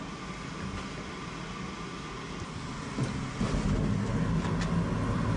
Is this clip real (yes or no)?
yes